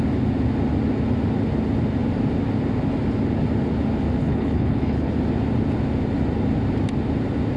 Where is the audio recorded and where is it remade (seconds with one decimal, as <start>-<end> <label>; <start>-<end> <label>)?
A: 0.0-4.2 recorded; 4.2-5.1 remade; 5.1-7.6 recorded